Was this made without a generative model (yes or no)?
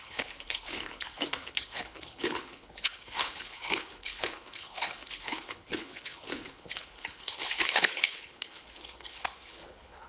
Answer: no